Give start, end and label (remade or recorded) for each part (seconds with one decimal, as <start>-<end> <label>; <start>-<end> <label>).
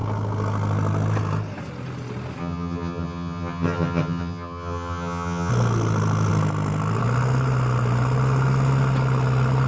0.0-2.4 recorded; 2.4-5.5 remade; 5.5-9.7 recorded